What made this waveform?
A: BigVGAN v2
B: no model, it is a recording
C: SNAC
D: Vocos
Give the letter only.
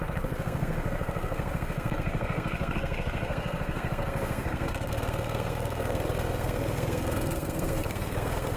C